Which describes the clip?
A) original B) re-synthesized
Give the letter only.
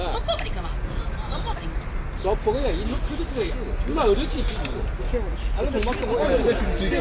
A